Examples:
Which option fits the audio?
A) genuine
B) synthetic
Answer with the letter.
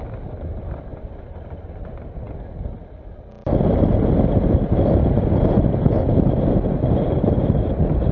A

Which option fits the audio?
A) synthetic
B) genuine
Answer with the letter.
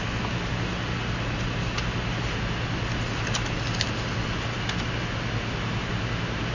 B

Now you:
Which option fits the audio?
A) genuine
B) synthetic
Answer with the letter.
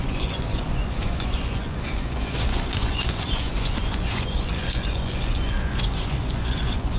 B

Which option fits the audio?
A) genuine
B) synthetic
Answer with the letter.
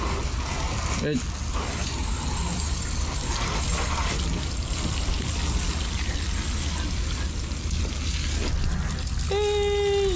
A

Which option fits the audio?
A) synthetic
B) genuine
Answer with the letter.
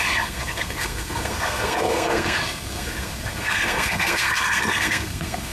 A